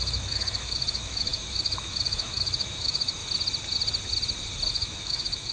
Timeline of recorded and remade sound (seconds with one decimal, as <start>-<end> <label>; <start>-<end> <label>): 0.0-3.2 remade; 3.2-4.7 recorded; 4.7-5.5 remade